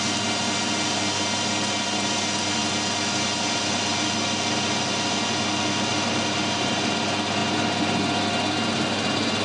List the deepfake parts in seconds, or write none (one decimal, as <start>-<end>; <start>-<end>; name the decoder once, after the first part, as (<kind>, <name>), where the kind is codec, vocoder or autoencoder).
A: none